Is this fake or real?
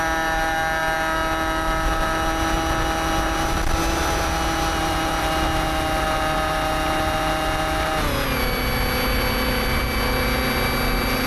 real